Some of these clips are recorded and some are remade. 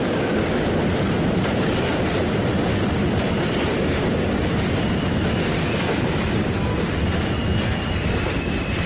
recorded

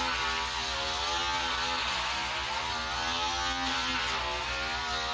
recorded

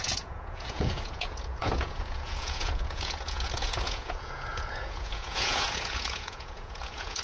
remade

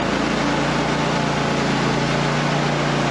recorded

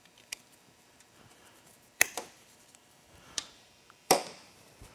remade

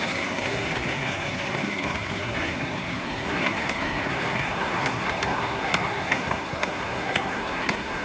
remade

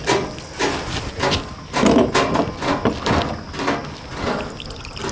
recorded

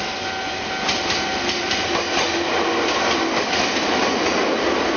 recorded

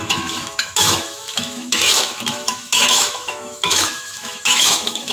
remade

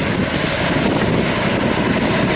recorded